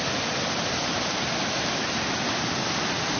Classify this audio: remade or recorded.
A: recorded